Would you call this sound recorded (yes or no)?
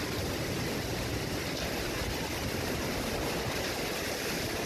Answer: yes